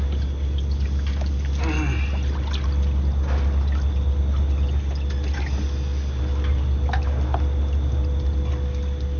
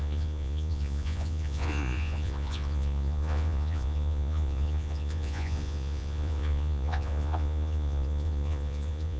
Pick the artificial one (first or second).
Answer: second